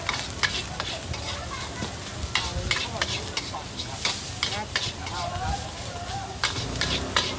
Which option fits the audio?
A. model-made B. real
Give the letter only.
B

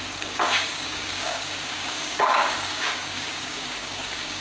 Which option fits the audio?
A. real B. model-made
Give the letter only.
B